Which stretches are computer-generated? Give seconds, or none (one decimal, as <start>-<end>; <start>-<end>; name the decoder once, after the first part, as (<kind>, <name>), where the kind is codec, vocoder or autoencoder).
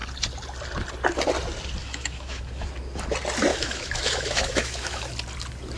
1.8-2.4 (autoencoder, DAC-VAE); 3.5-5.1